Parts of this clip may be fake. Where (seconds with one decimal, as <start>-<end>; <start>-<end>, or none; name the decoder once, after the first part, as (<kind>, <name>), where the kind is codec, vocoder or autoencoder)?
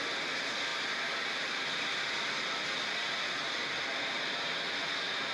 0.7-1.6 (vocoder, BigVGAN v2)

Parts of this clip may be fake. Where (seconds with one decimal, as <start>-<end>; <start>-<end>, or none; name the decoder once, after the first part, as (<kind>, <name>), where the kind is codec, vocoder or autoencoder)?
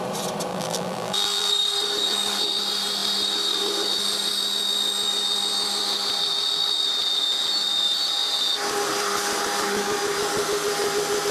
0.5-1.5 (vocoder, BigVGAN v2)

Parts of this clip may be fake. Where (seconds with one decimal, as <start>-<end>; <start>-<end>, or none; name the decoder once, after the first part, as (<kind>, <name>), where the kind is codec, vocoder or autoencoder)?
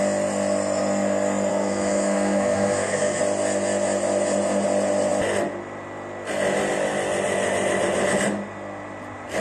1.5-3.2 (codec, SNAC)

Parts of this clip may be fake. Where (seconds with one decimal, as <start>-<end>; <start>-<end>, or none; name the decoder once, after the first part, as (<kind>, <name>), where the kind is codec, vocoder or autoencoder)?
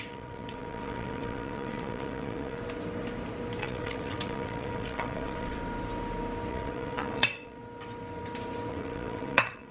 0.0-2.6 (vocoder, WaveNeXt); 3.6-5.6; 6.5-7.6; 8.7-9.7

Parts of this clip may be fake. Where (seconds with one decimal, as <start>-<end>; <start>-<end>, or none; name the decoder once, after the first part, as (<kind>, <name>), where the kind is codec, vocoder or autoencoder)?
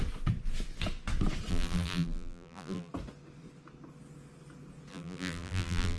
1.5-2.9 (vocoder, BigVGAN v2); 4.9-6.0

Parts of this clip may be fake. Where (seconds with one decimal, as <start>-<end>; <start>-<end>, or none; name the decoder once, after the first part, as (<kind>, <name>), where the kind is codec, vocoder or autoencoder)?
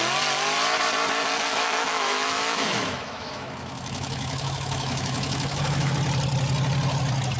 1.5-5.9 (autoencoder, DAC-VAE)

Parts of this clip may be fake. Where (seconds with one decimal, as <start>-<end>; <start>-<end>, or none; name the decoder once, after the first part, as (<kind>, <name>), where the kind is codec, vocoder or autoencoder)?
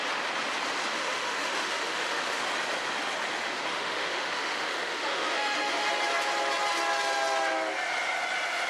0.9-2.4 (autoencoder, DAC-VAE); 3.7-5.9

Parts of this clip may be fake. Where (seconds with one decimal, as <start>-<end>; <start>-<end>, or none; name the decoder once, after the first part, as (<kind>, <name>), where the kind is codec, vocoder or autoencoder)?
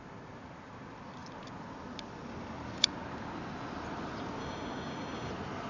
4.4-5.3 (codec, DAC)